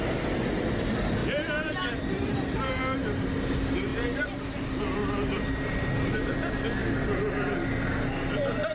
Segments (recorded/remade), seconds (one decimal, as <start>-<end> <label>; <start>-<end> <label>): 0.0-1.2 recorded; 1.2-2.7 remade; 2.7-3.9 recorded; 3.9-6.3 remade; 6.3-8.7 recorded